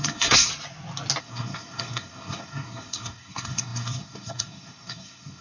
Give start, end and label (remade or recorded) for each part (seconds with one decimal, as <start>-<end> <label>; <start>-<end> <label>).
0.0-0.5 remade; 0.5-1.2 recorded; 1.2-5.4 remade